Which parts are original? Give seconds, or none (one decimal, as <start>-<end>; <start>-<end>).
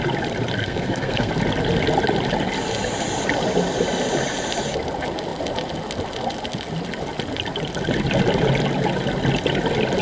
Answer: 0.0-0.6; 1.3-10.0